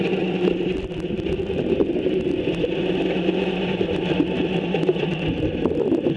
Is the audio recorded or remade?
recorded